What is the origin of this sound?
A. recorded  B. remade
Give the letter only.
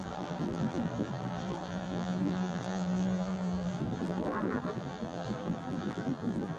B